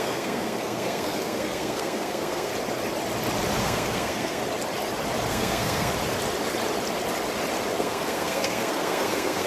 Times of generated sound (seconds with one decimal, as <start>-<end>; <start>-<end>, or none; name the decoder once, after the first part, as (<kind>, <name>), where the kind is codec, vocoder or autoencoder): 0.0-2.5 (codec, SNAC); 3.6-4.4; 5.3-5.9; 7.7-9.5